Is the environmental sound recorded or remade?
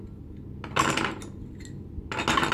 recorded